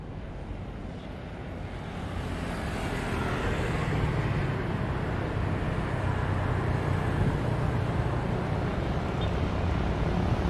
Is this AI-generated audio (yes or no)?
no